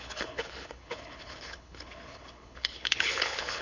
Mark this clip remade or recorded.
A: remade